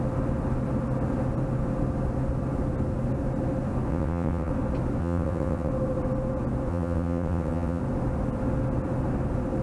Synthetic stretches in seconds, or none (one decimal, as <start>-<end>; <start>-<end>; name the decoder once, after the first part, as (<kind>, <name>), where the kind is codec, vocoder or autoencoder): 3.9-4.5 (vocoder, WaveNeXt); 5.0-5.7; 6.7-7.8